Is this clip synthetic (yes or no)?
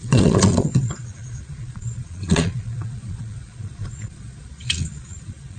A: yes